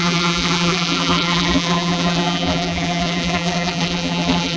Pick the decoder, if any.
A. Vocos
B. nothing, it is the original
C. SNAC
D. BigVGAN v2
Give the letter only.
D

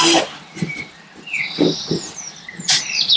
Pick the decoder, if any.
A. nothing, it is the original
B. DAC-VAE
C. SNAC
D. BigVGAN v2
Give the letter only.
D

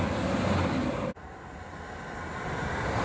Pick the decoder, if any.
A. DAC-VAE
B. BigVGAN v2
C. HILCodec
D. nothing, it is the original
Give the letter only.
D